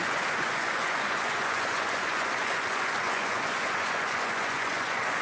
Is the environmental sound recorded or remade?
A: remade